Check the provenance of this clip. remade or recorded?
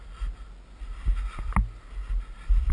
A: recorded